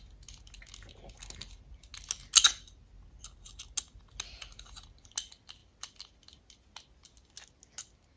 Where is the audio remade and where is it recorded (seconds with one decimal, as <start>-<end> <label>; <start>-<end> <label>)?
0.0-8.2 recorded